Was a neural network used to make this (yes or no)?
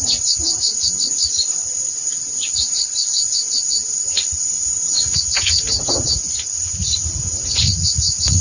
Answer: yes